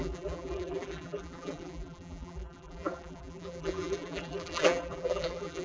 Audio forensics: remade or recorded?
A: remade